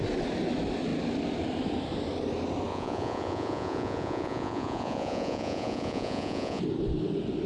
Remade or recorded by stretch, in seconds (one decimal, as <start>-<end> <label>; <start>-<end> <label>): 0.0-2.7 recorded; 2.7-6.6 remade; 6.6-7.5 recorded